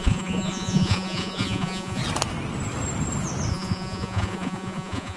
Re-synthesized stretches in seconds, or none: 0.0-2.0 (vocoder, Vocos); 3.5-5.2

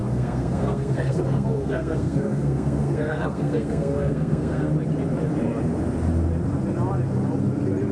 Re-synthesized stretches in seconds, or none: 0.0-4.7 (codec, SNAC)

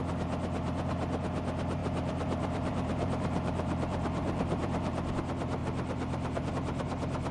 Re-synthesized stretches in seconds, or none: 1.8-5.1 (vocoder, BigVGAN v2); 5.6-6.5

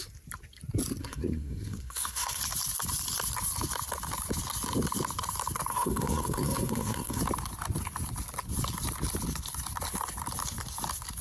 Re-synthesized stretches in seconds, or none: 1.0-2.4 (codec, SNAC); 5.7-7.2

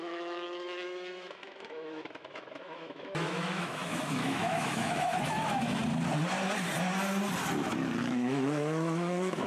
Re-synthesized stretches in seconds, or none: 0.0-5.8 (autoencoder, DAC-VAE); 8.0-9.5

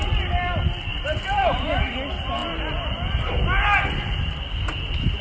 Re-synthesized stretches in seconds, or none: 0.9-1.9 (vocoder, BigVGAN v2)